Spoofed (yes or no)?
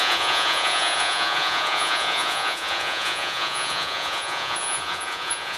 yes